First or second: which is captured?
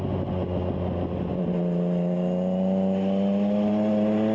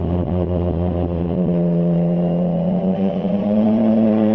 first